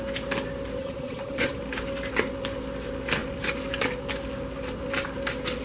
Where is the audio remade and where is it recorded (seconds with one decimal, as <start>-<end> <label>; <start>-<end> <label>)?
0.0-0.8 recorded; 0.8-1.6 remade; 1.6-5.6 recorded